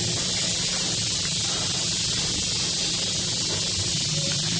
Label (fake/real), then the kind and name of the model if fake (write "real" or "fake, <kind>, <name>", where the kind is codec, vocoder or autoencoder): real